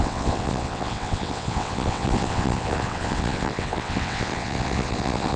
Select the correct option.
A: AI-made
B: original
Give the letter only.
A